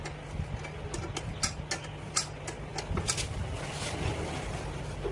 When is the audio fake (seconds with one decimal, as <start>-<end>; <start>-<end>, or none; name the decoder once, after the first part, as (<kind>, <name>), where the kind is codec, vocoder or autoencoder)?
none